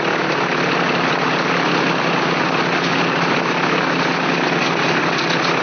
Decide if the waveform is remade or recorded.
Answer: recorded